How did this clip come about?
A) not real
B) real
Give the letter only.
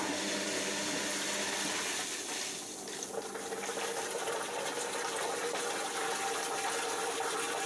B